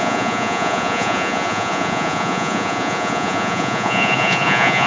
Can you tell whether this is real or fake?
fake